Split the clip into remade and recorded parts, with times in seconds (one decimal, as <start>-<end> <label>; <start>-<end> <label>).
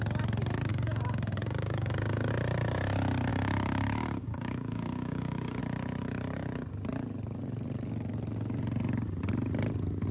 0.0-0.7 recorded; 0.7-2.3 remade; 2.3-3.3 recorded; 3.3-5.6 remade; 5.6-10.1 recorded